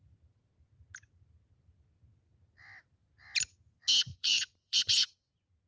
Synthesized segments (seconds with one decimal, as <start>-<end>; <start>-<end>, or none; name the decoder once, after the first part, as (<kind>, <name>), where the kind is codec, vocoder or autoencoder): 4.1-5.2 (vocoder, Vocos)